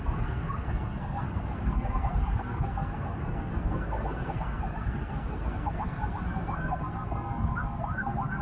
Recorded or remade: remade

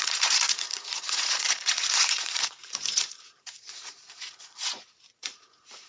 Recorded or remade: remade